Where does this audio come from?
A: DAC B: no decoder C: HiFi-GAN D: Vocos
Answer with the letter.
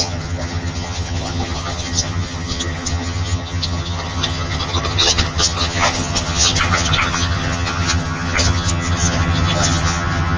C